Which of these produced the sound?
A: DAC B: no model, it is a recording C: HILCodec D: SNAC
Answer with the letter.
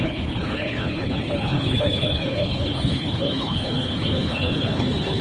C